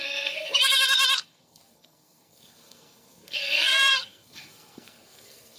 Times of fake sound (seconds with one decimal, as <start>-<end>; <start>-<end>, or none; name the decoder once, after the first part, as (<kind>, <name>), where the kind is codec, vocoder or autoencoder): 0.0-5.6 (codec, SNAC)